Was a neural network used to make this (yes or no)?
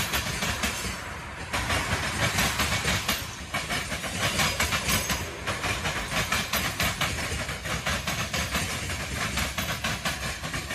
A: no